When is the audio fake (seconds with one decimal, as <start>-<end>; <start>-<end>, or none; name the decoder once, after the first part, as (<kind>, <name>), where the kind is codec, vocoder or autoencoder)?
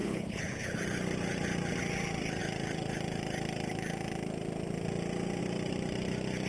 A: 0.0-0.8 (codec, HILCodec)